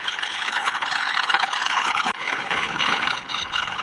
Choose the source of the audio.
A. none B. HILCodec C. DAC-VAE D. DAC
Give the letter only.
B